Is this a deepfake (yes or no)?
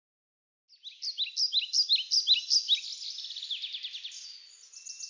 no